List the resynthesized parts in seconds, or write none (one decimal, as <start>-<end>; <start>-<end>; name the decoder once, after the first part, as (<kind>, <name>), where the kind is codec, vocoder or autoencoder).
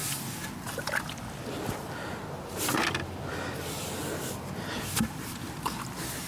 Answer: none